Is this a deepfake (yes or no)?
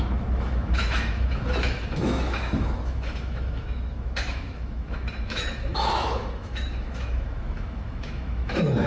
yes